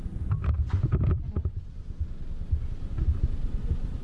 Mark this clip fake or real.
real